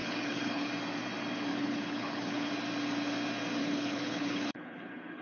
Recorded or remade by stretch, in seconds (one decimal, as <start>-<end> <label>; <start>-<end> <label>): 0.0-0.7 remade; 0.7-1.5 recorded; 1.5-2.5 remade; 2.5-3.6 recorded; 3.6-5.2 remade